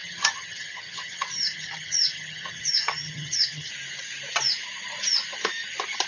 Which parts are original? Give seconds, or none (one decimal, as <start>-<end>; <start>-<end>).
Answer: 3.7-6.1